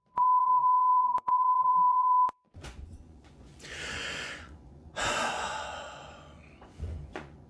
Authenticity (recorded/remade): remade